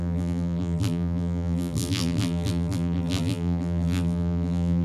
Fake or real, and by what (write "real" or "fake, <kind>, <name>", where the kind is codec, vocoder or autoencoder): fake, vocoder, BigVGAN v2